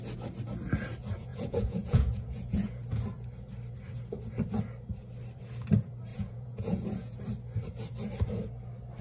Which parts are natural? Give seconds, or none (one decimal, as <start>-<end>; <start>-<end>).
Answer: 0.0-1.3; 2.9-6.1; 7.2-9.0